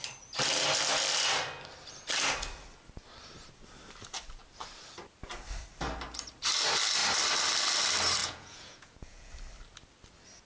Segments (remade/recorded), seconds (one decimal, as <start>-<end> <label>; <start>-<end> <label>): 0.0-8.2 recorded; 8.2-9.3 remade; 9.3-10.4 recorded